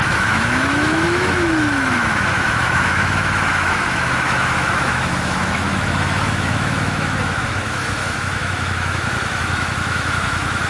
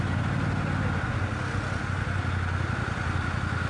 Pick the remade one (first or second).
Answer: first